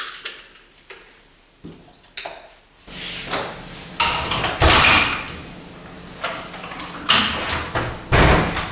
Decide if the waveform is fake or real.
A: real